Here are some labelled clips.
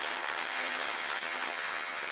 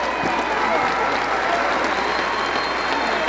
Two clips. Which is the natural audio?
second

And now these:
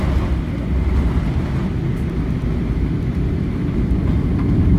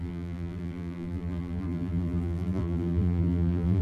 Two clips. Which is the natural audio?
first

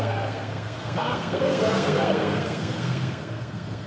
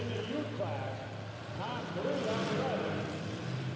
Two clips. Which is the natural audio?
second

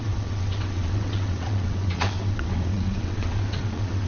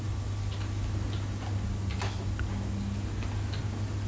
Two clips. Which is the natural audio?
second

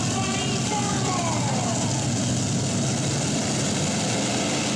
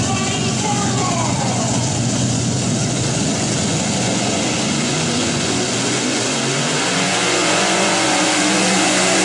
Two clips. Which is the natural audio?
first